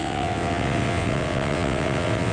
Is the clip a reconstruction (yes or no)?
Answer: yes